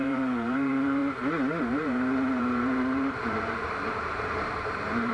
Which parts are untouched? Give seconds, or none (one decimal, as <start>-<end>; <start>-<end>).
1.0-1.6